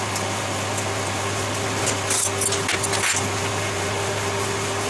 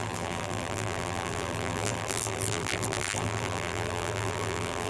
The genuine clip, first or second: first